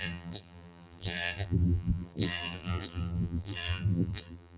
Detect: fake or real fake